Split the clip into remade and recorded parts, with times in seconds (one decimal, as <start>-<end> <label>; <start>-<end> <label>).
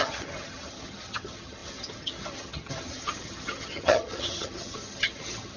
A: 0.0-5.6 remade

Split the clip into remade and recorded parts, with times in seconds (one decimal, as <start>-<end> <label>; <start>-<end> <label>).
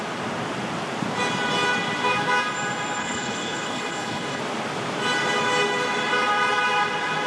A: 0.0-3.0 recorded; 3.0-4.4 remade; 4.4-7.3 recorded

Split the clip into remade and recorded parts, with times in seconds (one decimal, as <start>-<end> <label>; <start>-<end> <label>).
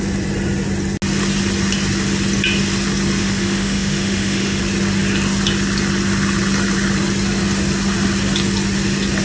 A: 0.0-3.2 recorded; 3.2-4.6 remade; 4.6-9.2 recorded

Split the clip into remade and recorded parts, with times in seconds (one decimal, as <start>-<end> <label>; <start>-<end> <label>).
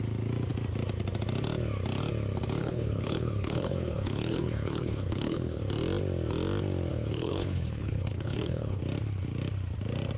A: 0.0-2.6 recorded; 2.6-5.6 remade; 5.6-6.9 recorded; 6.9-8.8 remade; 8.8-10.2 recorded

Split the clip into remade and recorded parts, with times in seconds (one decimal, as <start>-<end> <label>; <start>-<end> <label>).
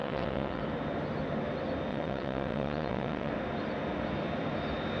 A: 0.0-0.6 remade; 0.6-1.9 recorded; 1.9-3.3 remade; 3.3-5.0 recorded